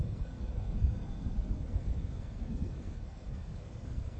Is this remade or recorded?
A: remade